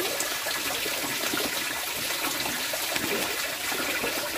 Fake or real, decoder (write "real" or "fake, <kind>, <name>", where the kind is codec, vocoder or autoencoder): real